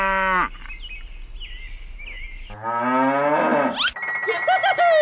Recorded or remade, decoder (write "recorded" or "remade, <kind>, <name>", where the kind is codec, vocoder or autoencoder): recorded